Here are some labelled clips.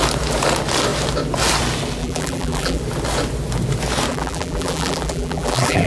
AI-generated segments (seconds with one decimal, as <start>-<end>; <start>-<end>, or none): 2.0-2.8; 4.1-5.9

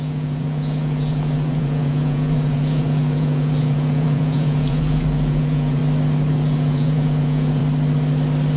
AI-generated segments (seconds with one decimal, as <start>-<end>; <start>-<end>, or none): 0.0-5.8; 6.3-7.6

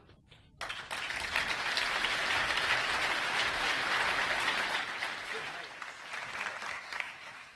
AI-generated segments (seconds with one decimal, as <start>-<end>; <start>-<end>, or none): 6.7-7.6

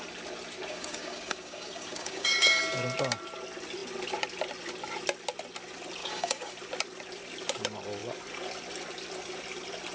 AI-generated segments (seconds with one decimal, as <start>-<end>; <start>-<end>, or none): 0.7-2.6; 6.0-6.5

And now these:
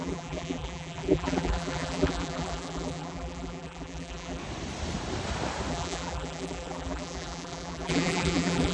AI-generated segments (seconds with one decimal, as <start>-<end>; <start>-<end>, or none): 0.0-4.4; 5.7-8.7